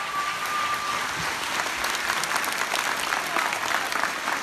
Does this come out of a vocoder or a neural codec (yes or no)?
no